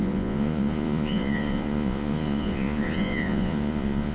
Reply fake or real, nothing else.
fake